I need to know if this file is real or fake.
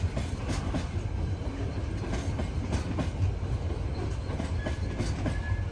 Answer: real